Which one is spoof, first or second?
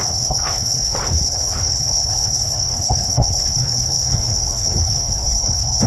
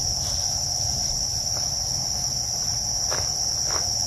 first